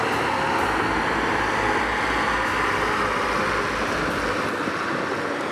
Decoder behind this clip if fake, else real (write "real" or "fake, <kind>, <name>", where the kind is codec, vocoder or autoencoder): real